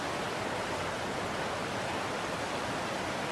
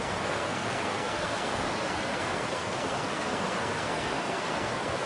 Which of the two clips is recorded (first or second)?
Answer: first